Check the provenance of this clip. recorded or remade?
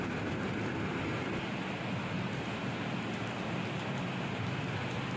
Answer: recorded